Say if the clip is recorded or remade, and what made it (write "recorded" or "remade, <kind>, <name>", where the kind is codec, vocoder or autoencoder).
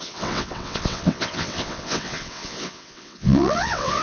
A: remade, vocoder, WaveNeXt